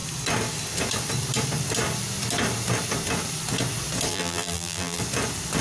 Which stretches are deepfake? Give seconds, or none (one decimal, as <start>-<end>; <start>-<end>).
4.1-5.0